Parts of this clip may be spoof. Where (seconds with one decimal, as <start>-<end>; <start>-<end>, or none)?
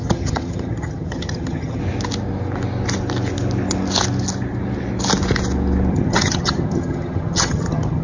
0.0-1.8; 5.9-8.0